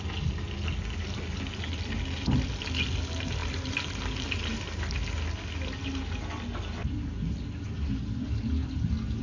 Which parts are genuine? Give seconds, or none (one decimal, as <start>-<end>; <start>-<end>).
0.0-9.2